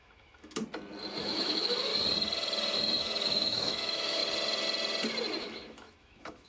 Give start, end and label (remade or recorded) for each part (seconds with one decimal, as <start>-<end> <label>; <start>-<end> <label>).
0.0-0.6 remade; 0.6-1.2 recorded; 1.2-1.9 remade; 1.9-3.0 recorded; 3.0-4.2 remade; 4.2-5.4 recorded; 5.4-6.5 remade